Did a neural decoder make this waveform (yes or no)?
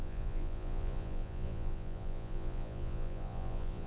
yes